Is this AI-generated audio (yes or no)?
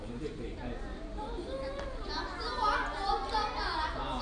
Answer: no